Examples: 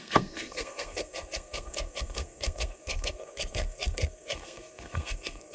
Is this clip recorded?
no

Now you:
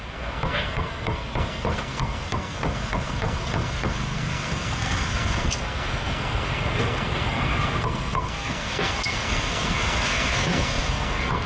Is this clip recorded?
no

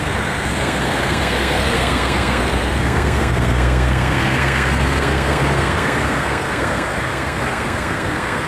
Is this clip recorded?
no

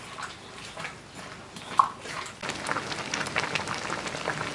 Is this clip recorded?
yes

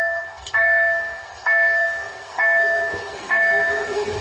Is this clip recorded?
no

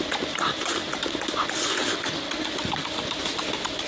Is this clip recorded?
yes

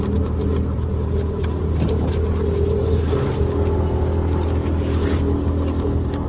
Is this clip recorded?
yes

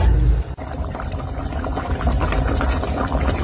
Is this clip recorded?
yes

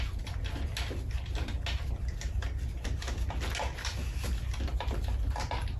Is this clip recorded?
yes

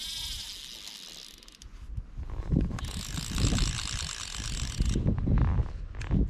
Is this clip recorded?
yes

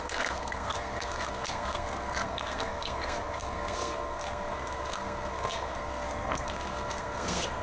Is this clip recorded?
no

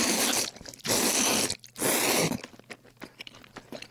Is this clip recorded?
yes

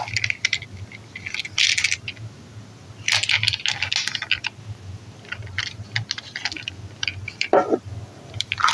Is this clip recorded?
yes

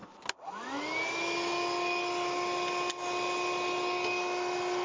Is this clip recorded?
yes